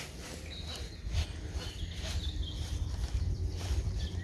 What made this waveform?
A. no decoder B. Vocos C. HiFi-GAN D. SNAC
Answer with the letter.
A